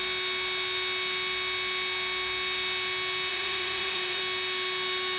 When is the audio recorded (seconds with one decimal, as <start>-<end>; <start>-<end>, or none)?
0.0-3.3; 4.2-5.2